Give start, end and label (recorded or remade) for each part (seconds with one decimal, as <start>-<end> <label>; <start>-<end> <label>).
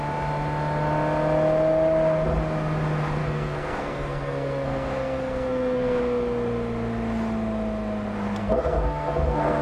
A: 0.0-3.2 recorded; 3.2-6.0 remade; 6.0-8.4 recorded; 8.4-9.6 remade